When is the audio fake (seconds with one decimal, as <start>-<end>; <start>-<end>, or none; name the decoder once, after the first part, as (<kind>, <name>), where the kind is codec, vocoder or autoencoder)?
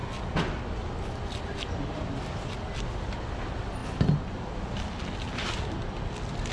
none